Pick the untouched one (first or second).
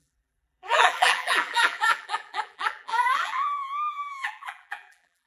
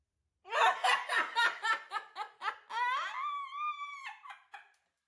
second